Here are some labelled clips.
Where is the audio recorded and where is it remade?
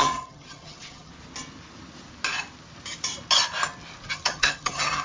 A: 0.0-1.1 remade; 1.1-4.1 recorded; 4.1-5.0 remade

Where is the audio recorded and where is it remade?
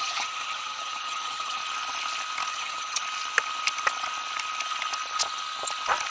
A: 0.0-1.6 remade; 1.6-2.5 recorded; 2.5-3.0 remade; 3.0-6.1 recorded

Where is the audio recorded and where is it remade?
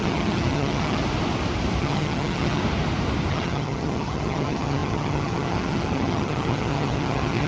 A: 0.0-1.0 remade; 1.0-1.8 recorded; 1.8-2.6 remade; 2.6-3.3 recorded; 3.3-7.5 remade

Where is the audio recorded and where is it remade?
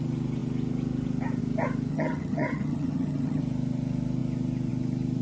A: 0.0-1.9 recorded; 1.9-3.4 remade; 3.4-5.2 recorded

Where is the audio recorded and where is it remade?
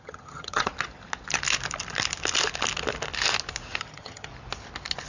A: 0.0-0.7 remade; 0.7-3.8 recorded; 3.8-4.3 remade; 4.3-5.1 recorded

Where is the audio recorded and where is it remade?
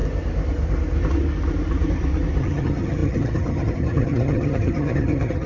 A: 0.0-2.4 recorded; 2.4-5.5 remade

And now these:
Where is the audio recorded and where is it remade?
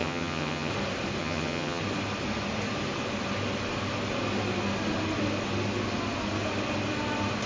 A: 0.0-0.7 remade; 0.7-1.2 recorded; 1.2-1.8 remade; 1.8-7.5 recorded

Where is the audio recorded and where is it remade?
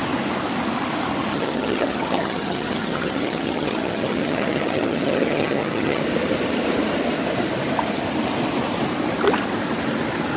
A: 0.0-1.3 recorded; 1.3-6.0 remade; 6.0-10.4 recorded